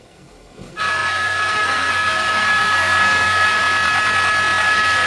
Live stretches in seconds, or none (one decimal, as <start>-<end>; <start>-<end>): 3.6-4.6